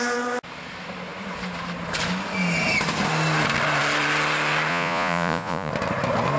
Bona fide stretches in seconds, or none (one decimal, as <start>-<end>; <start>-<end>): 0.0-4.7; 5.7-6.4